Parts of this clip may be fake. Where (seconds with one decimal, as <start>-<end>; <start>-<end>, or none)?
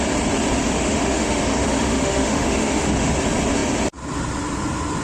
0.6-3.1